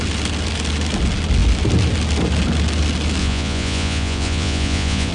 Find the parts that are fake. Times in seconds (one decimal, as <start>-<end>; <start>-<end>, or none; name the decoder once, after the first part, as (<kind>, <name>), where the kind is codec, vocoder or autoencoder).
3.2-5.1 (vocoder, Vocos)